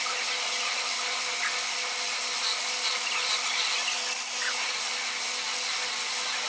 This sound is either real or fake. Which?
real